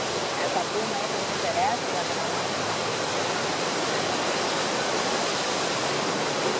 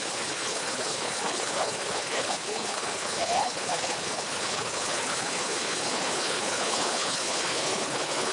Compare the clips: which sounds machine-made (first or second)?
second